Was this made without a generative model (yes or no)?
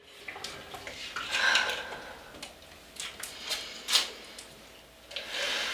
yes